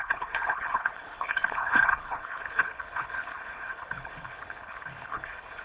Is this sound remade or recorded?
remade